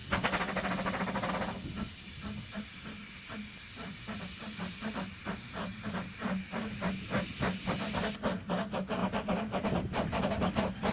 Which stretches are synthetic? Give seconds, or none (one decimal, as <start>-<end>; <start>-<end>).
3.0-7.1; 9.0-10.3

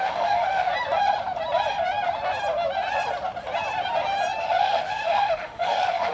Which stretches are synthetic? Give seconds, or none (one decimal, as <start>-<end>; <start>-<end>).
0.0-0.7; 4.4-6.1

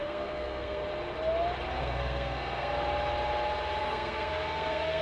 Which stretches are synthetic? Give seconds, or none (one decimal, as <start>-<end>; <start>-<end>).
0.0-0.8; 1.8-2.7; 3.8-5.0

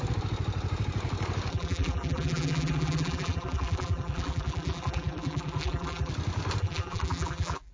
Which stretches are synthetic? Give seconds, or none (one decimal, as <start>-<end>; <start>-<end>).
1.5-6.1; 6.6-7.7

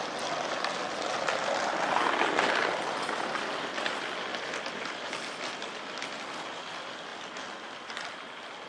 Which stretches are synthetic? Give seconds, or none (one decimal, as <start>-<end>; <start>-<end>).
none

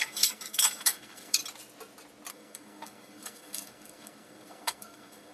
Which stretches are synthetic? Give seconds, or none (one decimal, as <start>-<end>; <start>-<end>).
0.0-1.4; 2.3-5.3